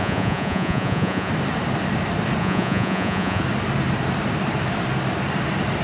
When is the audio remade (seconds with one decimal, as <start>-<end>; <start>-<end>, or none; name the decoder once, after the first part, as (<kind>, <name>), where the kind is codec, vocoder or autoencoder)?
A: 0.0-1.3 (vocoder, Vocos); 2.4-3.4